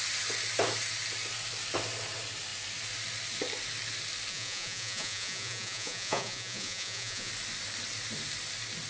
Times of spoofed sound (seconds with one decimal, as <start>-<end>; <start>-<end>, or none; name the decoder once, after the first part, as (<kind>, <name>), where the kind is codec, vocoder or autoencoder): 4.3-7.3 (vocoder, Vocos)